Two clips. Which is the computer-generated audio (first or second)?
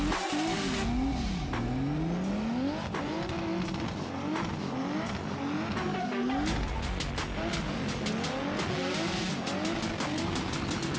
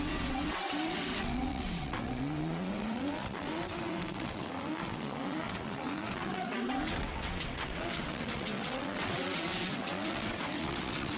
second